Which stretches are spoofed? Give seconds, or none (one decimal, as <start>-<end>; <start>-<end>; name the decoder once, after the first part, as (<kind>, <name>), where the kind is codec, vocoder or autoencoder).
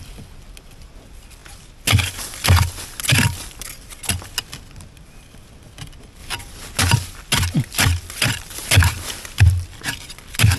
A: none